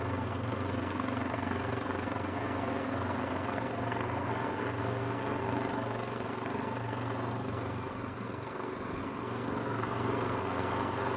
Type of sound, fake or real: fake